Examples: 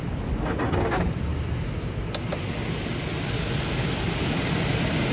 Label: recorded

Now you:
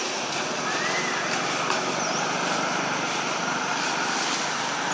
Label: recorded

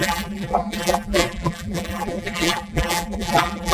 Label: remade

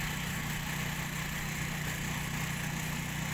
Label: recorded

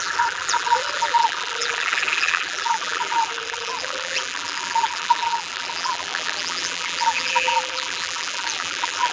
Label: remade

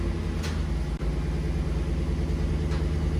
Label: recorded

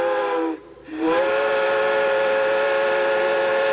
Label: remade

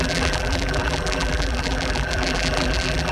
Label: remade